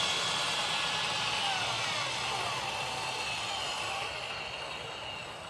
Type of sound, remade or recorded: recorded